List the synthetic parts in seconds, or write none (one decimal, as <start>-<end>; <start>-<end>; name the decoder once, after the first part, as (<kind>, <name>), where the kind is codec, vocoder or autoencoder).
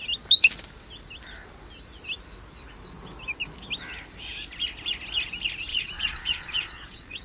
5.7-7.2 (vocoder, Vocos)